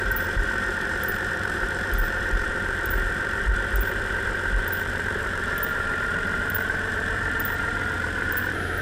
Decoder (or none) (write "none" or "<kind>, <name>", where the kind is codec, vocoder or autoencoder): vocoder, BigVGAN v2